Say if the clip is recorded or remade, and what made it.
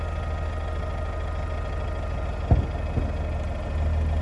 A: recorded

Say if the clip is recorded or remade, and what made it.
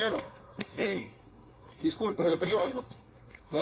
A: remade, codec, SNAC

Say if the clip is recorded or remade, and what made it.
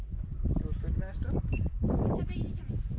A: recorded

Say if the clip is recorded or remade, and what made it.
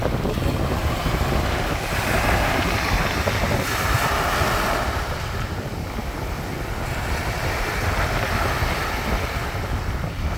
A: recorded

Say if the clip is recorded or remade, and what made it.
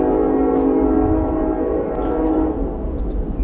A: recorded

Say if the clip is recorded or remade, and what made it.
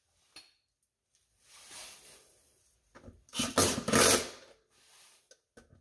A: recorded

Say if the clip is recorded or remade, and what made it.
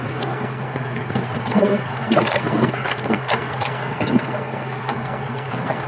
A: remade, codec, SNAC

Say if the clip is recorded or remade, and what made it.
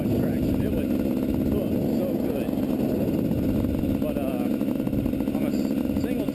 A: recorded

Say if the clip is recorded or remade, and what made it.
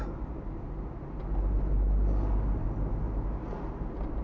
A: recorded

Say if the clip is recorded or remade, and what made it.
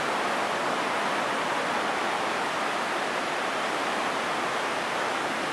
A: recorded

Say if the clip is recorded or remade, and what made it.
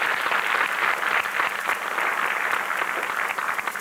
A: recorded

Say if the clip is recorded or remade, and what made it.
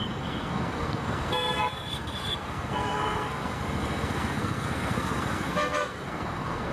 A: remade, codec, SNAC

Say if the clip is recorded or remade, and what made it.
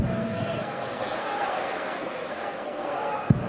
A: remade, codec, SNAC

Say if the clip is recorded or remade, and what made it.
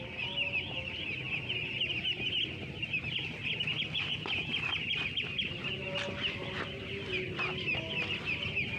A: recorded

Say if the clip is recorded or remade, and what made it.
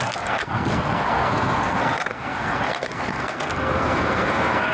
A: remade, codec, SNAC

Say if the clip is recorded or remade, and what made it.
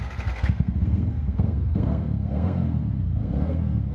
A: remade, codec, SNAC